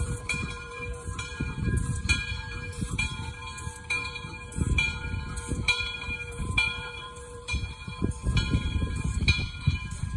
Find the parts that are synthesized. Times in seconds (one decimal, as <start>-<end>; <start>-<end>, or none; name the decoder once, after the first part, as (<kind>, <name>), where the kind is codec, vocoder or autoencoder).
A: 0.0-10.2 (vocoder, BigVGAN v2)